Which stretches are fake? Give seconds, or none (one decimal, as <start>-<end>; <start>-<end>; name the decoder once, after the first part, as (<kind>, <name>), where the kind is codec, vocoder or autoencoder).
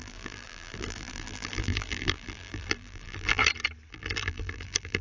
0.0-3.4 (vocoder, BigVGAN v2); 3.9-5.0